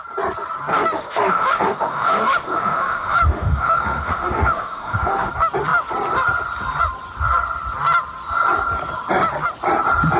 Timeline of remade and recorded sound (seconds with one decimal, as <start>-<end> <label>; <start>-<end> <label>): 0.0-0.7 recorded; 0.7-5.3 remade; 5.3-10.2 recorded